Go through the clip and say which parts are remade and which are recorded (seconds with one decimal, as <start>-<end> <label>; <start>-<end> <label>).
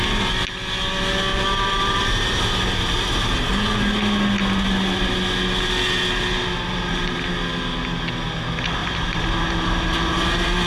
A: 0.0-1.3 recorded; 1.3-2.4 remade; 2.4-6.3 recorded; 6.3-7.3 remade; 7.3-8.8 recorded; 8.8-10.7 remade